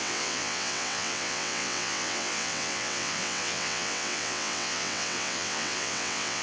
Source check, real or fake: fake